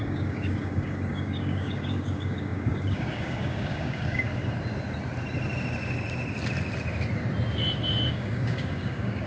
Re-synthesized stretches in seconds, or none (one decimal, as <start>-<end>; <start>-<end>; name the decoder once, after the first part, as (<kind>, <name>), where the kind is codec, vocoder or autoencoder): 0.0-4.3 (codec, DAC); 8.1-9.3